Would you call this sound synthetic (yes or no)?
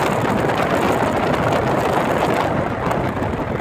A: no